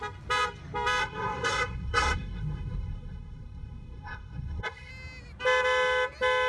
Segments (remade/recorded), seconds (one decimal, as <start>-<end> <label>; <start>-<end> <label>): 0.0-1.0 recorded; 1.0-4.9 remade; 4.9-6.5 recorded